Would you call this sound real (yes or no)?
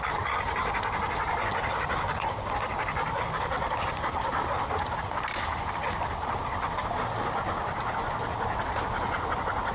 yes